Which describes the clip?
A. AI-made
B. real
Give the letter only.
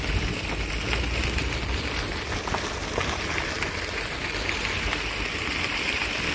B